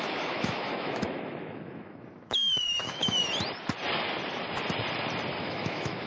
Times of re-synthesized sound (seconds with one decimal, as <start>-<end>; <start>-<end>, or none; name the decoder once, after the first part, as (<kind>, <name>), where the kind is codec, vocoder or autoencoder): 0.0-3.2 (autoencoder, DAC-VAE); 5.4-6.1